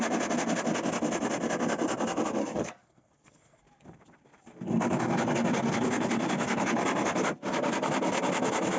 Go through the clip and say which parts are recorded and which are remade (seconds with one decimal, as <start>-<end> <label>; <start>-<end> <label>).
0.0-2.4 recorded; 2.4-3.6 remade; 3.6-8.8 recorded

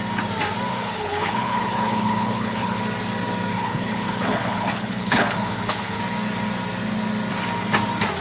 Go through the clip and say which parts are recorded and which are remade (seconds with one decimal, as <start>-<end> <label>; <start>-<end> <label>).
0.0-0.7 recorded; 0.7-2.8 remade; 2.8-3.5 recorded; 3.5-6.0 remade; 6.0-8.2 recorded

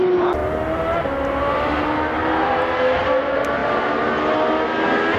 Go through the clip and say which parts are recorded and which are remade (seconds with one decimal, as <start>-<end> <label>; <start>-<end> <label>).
0.0-5.2 recorded

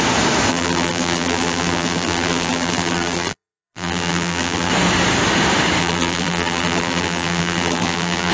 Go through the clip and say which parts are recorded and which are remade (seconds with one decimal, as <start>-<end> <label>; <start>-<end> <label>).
0.0-0.5 recorded; 0.5-4.7 remade; 4.7-5.8 recorded; 5.8-8.3 remade

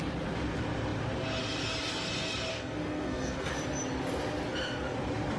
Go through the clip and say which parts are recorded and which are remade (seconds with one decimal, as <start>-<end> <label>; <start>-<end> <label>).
0.0-2.5 recorded; 2.5-3.5 remade; 3.5-5.4 recorded

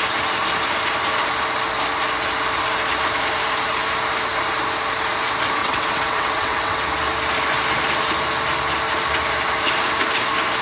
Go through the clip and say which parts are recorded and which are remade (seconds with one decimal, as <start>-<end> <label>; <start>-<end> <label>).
0.0-5.6 recorded; 5.6-6.8 remade; 6.8-10.6 recorded

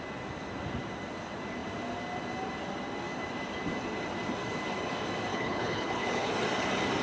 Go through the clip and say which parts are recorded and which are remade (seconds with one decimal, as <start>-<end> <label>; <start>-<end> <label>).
0.0-5.3 recorded; 5.3-6.3 remade; 6.3-7.0 recorded